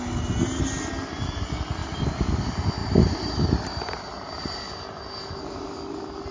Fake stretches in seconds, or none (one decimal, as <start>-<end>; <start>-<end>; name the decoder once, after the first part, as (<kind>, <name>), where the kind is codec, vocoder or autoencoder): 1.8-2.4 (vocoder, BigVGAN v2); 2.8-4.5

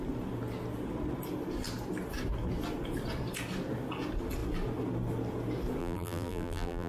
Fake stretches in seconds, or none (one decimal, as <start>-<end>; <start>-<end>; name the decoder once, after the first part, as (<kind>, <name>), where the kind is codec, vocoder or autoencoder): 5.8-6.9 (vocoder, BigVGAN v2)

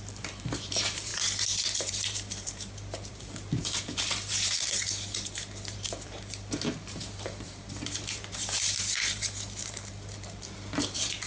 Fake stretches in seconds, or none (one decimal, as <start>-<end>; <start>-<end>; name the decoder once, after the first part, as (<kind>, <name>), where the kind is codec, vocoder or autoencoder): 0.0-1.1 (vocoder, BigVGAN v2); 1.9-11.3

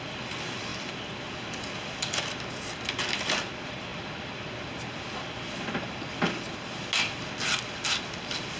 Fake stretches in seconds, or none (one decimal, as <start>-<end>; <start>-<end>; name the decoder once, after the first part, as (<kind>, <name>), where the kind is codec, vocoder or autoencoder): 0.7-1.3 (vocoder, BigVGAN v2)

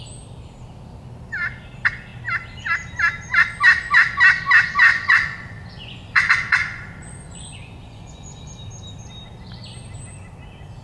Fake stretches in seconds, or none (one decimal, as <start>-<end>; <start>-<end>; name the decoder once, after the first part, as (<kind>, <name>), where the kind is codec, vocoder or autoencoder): 4.9-8.5 (vocoder, Vocos)